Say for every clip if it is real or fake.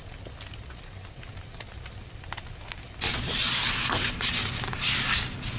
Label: real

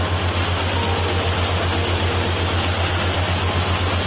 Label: real